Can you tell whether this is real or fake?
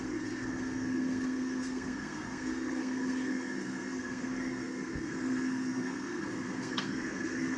fake